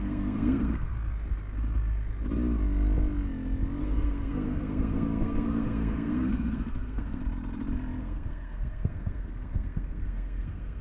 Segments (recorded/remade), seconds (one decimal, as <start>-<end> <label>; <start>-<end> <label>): 0.0-0.9 remade; 0.9-3.8 recorded; 3.8-7.2 remade; 7.2-8.0 recorded; 8.0-10.8 remade